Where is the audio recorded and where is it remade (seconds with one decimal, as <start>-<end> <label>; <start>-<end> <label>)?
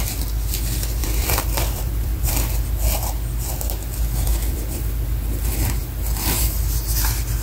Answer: 0.0-1.0 recorded; 1.0-2.3 remade; 2.3-4.3 recorded; 4.3-4.9 remade; 4.9-7.4 recorded